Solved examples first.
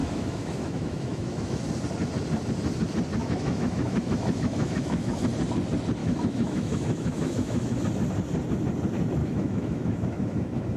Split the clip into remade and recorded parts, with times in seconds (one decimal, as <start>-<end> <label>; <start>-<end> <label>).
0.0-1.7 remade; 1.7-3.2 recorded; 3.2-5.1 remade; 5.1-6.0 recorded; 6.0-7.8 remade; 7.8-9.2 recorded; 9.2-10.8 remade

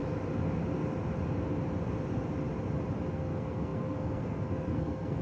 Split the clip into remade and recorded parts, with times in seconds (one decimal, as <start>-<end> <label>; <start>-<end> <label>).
0.0-3.1 recorded; 3.1-5.2 remade

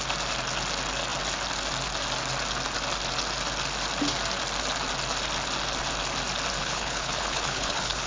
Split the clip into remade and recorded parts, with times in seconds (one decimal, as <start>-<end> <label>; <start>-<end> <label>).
0.0-6.6 recorded; 6.6-8.1 remade